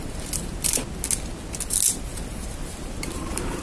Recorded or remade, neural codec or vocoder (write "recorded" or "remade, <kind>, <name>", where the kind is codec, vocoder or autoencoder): recorded